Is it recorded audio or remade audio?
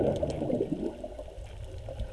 recorded